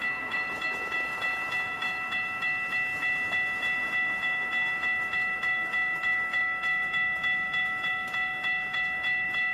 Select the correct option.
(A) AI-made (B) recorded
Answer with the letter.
A